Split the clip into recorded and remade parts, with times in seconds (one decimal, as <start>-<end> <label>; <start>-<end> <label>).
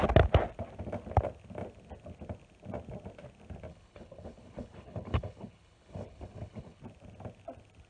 0.0-3.7 recorded; 3.7-6.8 remade; 6.8-7.9 recorded